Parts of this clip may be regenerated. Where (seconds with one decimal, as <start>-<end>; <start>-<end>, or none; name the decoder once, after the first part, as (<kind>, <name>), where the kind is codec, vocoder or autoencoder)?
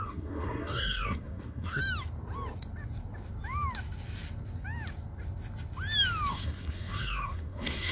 0.0-1.8 (codec, SNAC); 6.3-7.9